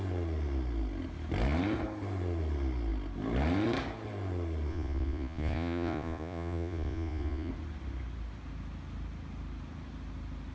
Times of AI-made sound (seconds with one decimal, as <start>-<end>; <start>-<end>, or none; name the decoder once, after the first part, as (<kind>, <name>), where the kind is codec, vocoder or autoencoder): 4.7-7.5 (vocoder, Vocos)